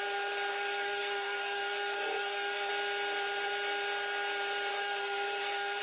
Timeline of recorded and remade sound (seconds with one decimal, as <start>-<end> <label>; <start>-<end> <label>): 0.0-0.5 recorded; 0.5-2.7 remade; 2.7-4.7 recorded; 4.7-5.8 remade